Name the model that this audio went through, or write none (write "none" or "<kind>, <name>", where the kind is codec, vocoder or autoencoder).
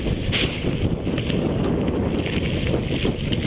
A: none